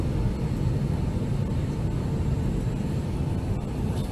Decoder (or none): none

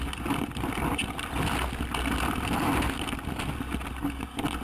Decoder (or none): none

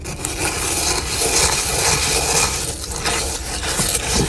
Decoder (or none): none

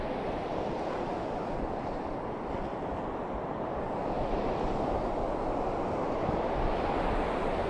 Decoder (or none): none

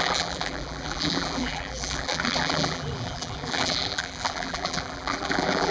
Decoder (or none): vocoder, BigVGAN v2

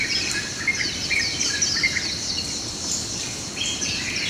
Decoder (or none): none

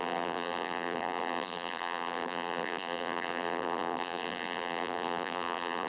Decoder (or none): vocoder, BigVGAN v2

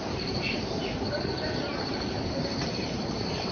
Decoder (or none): vocoder, BigVGAN v2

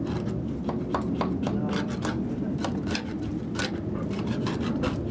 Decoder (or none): none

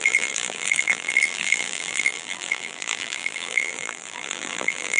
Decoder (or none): vocoder, BigVGAN v2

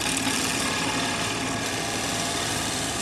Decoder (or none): none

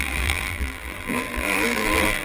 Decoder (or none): vocoder, BigVGAN v2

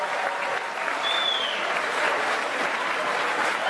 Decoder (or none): vocoder, BigVGAN v2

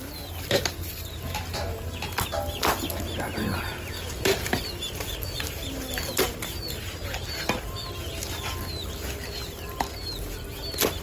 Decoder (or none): none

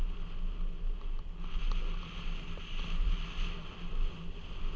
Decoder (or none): none